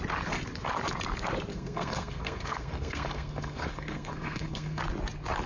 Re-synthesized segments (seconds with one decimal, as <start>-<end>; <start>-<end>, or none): 1.5-4.8